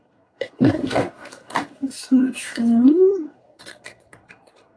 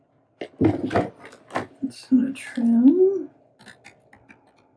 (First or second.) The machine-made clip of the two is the first